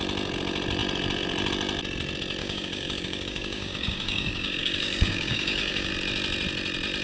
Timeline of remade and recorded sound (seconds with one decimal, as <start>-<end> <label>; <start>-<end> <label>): 0.0-2.4 recorded; 2.4-5.9 remade; 5.9-7.0 recorded